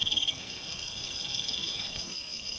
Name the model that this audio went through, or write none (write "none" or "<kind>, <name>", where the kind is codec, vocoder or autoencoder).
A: codec, SNAC